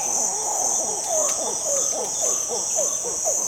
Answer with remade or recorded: remade